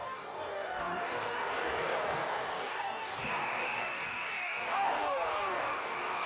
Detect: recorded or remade remade